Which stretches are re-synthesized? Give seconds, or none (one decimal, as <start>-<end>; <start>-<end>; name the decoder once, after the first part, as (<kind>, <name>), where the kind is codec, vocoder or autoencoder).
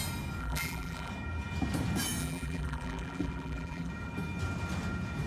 0.4-1.1 (vocoder, BigVGAN v2); 2.2-3.9